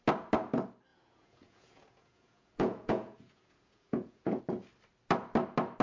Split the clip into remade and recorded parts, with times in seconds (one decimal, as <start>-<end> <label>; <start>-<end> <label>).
0.0-0.9 recorded; 0.9-4.4 remade; 4.4-5.8 recorded